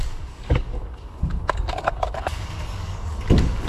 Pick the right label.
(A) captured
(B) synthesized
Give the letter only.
B